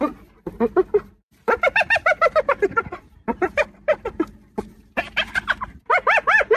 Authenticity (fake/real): fake